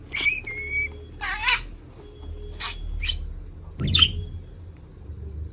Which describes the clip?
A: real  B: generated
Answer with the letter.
A